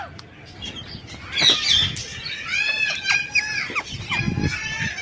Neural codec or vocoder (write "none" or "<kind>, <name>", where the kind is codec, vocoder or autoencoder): none